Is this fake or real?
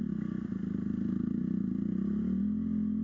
real